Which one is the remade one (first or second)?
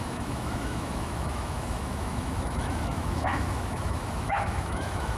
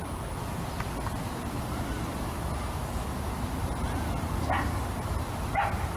first